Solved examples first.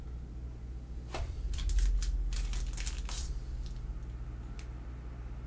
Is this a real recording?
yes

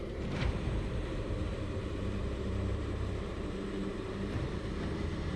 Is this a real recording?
no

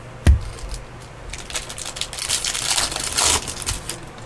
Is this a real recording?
yes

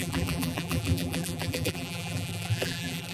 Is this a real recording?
no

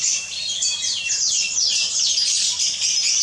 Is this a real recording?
yes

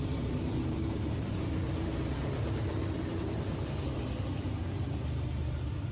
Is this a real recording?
no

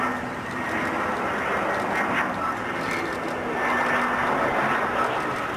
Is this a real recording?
yes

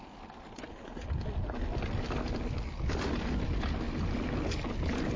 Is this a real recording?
yes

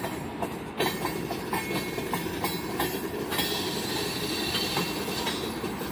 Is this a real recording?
yes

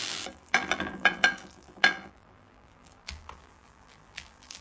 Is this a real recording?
no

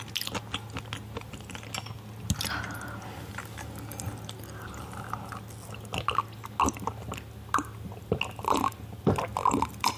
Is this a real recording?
yes